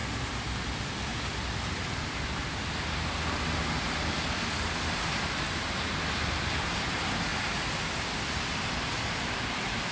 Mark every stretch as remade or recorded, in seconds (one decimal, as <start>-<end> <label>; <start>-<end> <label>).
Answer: 0.0-0.6 recorded; 0.6-1.1 remade; 1.1-6.0 recorded; 6.0-7.3 remade; 7.3-9.1 recorded; 9.1-9.9 remade